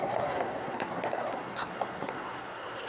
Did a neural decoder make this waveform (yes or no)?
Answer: yes